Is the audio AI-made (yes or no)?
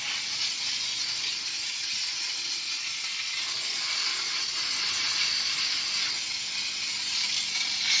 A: no